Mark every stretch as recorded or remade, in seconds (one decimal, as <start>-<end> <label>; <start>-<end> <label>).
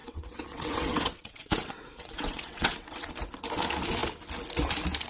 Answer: 0.0-3.1 remade; 3.1-5.1 recorded